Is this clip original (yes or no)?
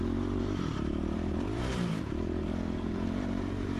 no